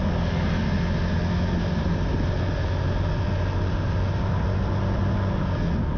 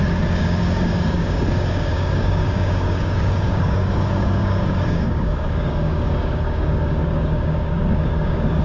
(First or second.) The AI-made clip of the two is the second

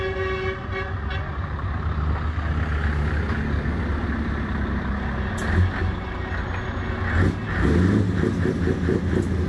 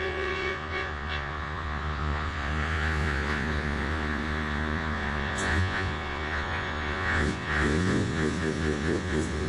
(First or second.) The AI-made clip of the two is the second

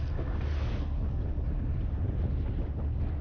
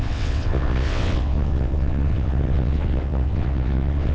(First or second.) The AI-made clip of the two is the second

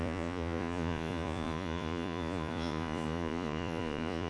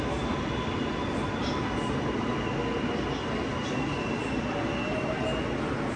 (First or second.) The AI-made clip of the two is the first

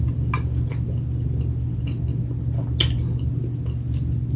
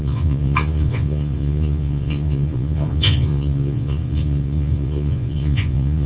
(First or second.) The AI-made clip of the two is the second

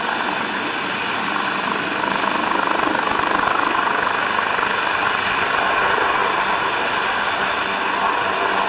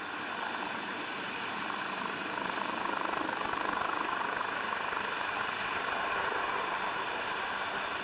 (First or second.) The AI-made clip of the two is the second